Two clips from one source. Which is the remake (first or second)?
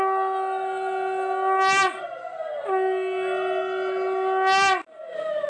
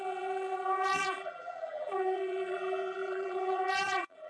second